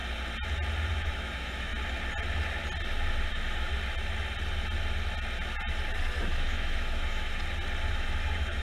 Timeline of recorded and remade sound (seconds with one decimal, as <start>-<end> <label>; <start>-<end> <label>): 0.0-0.9 recorded; 0.9-1.7 remade; 1.7-3.3 recorded; 3.3-3.7 remade; 3.7-6.2 recorded; 6.2-7.3 remade; 7.3-7.9 recorded; 7.9-8.6 remade